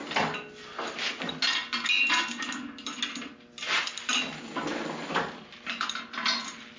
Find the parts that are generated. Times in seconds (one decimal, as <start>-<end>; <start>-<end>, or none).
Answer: none